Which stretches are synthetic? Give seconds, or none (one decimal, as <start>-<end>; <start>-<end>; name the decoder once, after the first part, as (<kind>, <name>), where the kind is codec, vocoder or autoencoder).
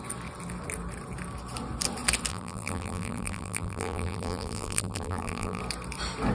2.3-5.6 (vocoder, BigVGAN v2)